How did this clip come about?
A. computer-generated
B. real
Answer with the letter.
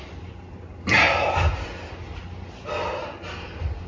B